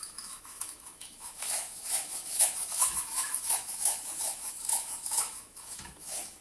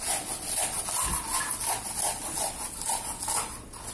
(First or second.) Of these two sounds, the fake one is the first